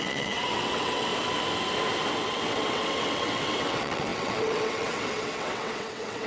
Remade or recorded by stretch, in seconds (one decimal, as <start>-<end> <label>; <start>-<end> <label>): 0.0-1.1 remade; 1.1-2.1 recorded; 2.1-6.3 remade